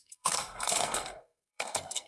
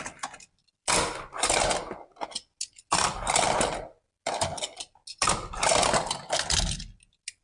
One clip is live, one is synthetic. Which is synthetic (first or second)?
first